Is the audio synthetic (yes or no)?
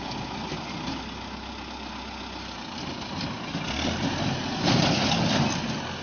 no